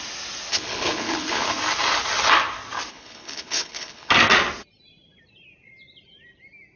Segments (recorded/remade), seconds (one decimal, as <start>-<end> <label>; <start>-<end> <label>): 0.0-0.5 recorded; 0.5-1.5 remade; 1.5-2.9 recorded; 2.9-4.1 remade; 4.1-6.8 recorded